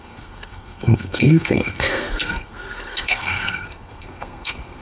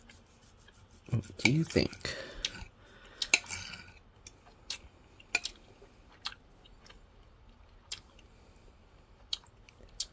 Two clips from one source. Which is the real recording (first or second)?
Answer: second